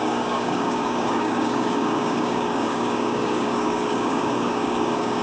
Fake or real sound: fake